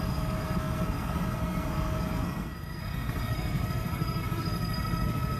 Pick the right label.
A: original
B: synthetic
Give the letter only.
B